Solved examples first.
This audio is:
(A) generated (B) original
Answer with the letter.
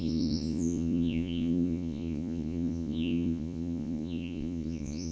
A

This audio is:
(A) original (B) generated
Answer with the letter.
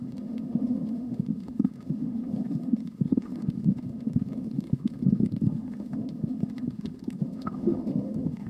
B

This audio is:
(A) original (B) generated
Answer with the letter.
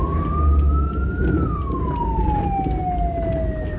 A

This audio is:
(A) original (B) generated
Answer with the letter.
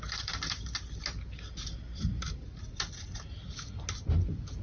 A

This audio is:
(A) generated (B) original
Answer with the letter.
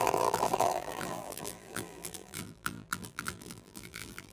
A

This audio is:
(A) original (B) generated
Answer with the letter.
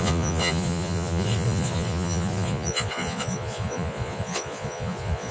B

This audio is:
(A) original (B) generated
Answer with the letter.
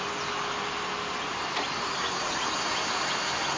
A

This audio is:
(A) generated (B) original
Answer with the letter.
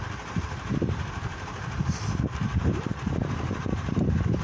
A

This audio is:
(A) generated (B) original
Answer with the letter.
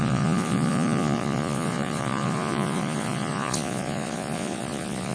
A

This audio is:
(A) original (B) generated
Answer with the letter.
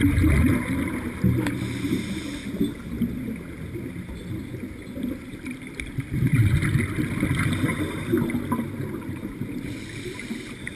A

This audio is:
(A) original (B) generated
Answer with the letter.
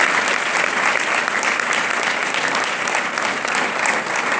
A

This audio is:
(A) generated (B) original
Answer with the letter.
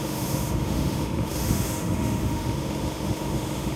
A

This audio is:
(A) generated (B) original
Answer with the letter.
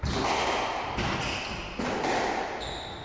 B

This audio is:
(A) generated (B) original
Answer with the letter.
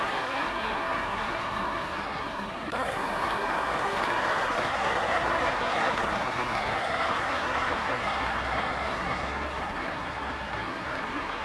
A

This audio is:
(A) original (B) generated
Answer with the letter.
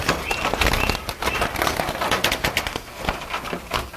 A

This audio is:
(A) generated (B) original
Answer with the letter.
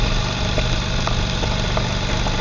B